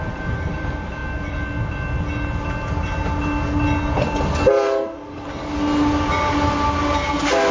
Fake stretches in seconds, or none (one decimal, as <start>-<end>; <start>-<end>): none